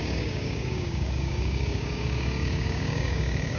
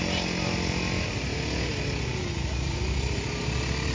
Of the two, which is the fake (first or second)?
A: first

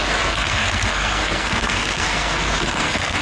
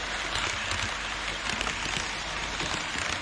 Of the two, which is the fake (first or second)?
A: first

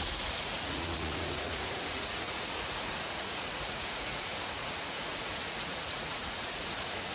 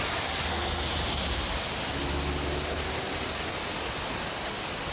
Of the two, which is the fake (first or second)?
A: first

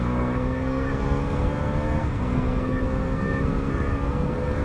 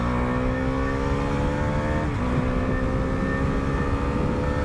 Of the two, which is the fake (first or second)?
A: first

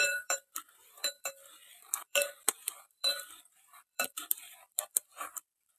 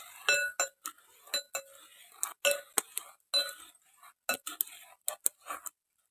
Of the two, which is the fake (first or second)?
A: first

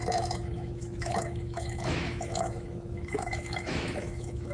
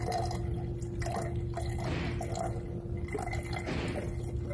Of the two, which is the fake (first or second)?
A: first